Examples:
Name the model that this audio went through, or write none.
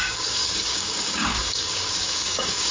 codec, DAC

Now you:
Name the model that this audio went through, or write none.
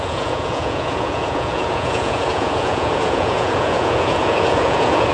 vocoder, Vocos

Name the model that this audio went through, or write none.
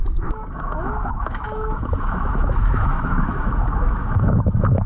autoencoder, DAC-VAE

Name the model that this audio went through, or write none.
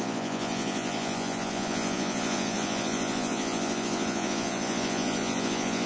vocoder, Vocos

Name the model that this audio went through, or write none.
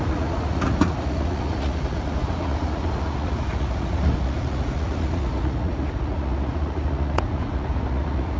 vocoder, Vocos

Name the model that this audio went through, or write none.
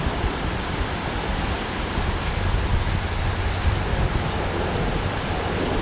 none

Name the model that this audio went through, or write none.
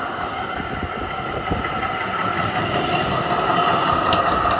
none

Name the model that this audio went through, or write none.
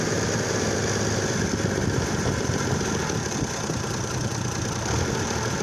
vocoder, BigVGAN v2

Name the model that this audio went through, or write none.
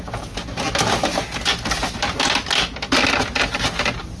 none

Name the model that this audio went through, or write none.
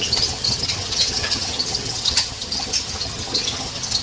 vocoder, HiFi-GAN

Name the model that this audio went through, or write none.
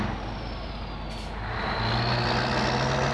none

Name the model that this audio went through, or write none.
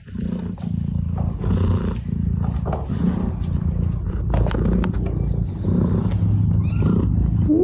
none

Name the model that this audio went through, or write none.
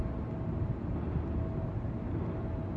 none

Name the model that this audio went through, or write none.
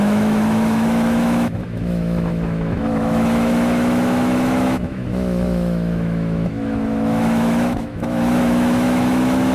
autoencoder, DAC-VAE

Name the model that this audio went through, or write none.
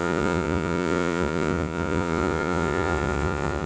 vocoder, Vocos